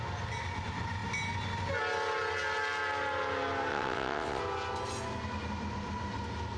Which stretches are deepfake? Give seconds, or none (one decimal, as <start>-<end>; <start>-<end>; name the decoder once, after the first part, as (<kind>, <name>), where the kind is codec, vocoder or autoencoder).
3.7-4.4 (vocoder, WaveNeXt)